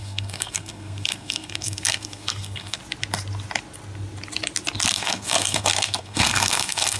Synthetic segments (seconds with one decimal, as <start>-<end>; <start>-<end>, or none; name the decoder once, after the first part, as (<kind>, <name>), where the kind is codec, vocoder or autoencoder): 0.0-2.8 (codec, SNAC); 4.9-7.0